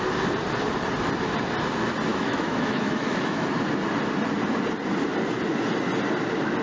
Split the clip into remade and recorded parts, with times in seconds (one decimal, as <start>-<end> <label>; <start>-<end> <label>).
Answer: 0.0-2.1 recorded; 2.1-3.5 remade; 3.5-6.6 recorded